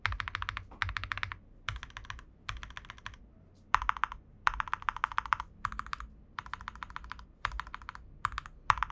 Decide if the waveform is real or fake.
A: real